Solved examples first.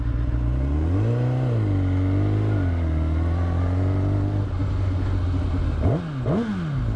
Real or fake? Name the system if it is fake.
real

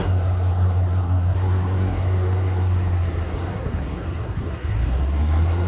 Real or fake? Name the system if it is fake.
fake, codec, SNAC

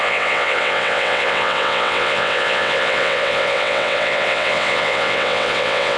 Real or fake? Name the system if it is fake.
fake, vocoder, WaveNeXt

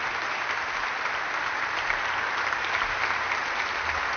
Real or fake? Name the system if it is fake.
real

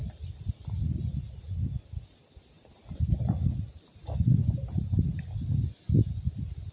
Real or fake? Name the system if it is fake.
real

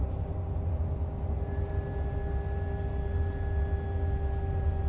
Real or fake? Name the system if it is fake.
real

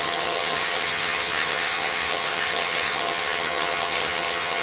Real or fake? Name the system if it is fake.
fake, vocoder, HiFi-GAN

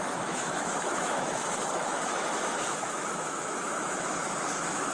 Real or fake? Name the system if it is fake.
fake, autoencoder, DAC-VAE